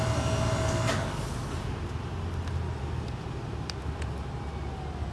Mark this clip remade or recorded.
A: recorded